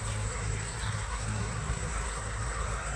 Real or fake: fake